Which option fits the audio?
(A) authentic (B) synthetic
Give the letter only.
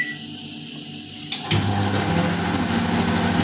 A